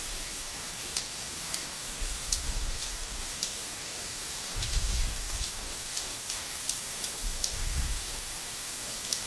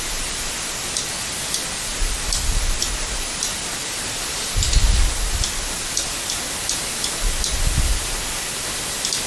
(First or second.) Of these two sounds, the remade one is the first